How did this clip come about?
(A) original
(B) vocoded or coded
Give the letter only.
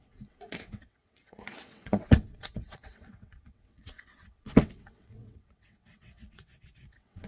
B